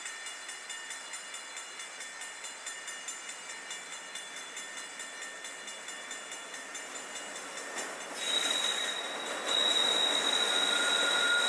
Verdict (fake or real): real